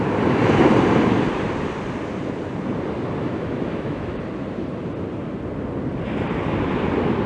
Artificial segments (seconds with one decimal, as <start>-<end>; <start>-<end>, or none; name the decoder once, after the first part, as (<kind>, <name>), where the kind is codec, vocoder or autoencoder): 3.2-4.2 (autoencoder, DAC-VAE)